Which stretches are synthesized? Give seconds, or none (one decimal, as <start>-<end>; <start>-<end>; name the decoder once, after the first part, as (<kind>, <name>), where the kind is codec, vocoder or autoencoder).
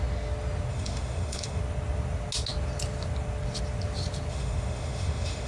0.7-1.6 (autoencoder, DAC-VAE); 4.3-5.5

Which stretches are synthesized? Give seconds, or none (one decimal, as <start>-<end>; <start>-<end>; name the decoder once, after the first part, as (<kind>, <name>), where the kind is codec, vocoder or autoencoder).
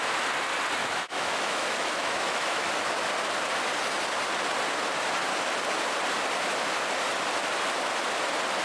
0.8-2.7 (autoencoder, DAC-VAE)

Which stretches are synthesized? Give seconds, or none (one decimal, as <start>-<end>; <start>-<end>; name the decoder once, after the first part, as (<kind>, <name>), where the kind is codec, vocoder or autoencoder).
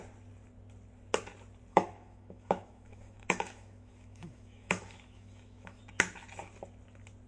1.7-5.8 (autoencoder, DAC-VAE)